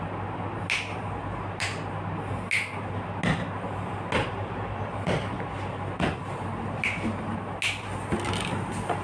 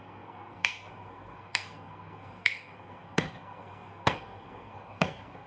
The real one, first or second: first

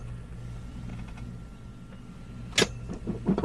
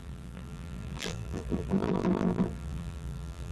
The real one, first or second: first